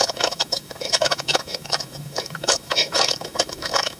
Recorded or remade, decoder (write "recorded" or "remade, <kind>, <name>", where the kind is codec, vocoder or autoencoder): remade, autoencoder, DAC-VAE